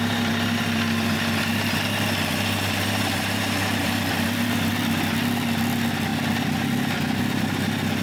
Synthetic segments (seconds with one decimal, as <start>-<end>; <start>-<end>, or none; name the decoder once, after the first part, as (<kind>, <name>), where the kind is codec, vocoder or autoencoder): 3.8-4.7 (vocoder, BigVGAN v2)